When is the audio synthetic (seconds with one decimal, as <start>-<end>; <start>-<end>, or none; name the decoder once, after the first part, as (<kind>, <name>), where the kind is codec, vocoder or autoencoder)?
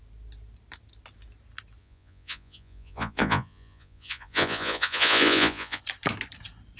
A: 1.8-5.8 (vocoder, Vocos)